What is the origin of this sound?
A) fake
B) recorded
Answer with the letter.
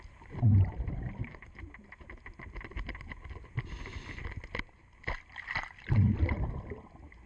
B